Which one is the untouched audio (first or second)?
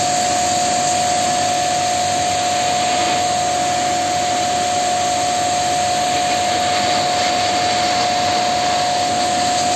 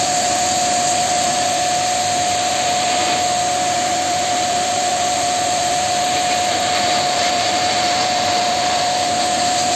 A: first